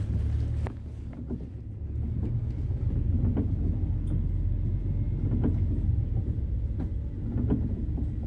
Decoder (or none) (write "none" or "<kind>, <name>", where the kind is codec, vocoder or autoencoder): none